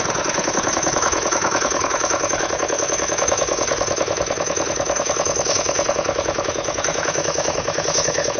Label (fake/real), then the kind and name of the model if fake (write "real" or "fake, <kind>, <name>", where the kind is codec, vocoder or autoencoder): fake, autoencoder, DAC-VAE